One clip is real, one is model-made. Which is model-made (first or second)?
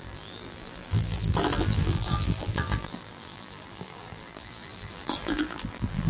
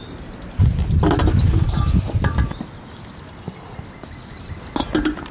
first